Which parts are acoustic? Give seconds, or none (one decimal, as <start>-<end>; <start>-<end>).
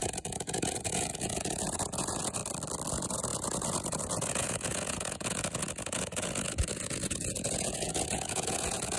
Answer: 2.4-2.9